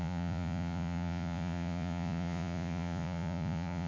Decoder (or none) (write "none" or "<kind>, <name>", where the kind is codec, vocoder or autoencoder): vocoder, Vocos